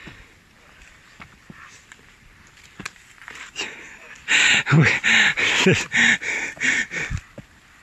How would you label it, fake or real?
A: real